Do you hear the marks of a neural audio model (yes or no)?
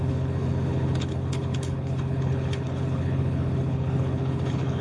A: yes